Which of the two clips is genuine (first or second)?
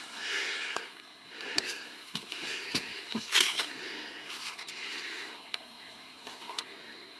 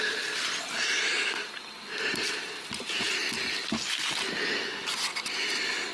second